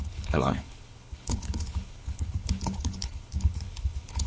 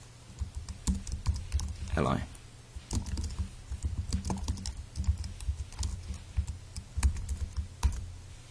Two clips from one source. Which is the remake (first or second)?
first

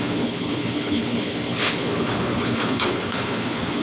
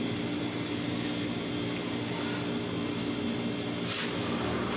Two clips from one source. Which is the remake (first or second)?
first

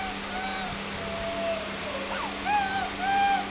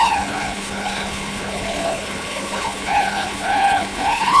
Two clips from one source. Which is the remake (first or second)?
second